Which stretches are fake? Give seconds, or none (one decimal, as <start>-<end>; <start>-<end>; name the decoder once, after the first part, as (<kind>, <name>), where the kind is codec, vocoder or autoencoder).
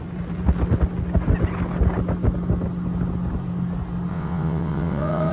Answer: 4.1-5.3 (vocoder, WaveNeXt)